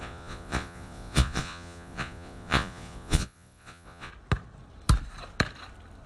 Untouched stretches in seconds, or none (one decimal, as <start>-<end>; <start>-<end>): 4.1-6.1